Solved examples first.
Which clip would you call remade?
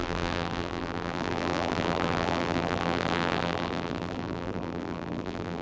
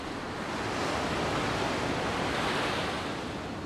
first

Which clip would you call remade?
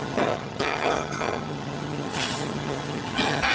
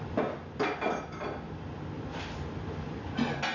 first